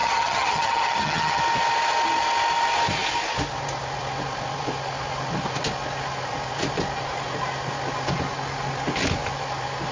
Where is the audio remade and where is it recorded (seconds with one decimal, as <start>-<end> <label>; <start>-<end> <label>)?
0.0-1.4 remade; 1.4-9.9 recorded